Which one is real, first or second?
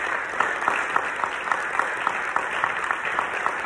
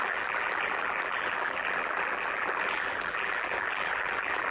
first